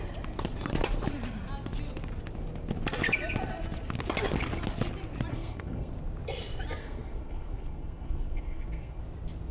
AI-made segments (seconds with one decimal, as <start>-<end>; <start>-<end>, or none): 5.3-5.9; 6.8-9.0